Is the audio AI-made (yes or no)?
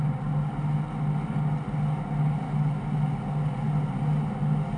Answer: no